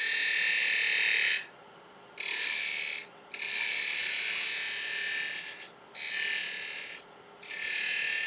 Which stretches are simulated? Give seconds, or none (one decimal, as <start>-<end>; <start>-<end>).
none